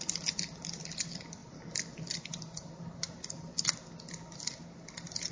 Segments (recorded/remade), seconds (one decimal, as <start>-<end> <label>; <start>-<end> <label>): 0.0-5.3 recorded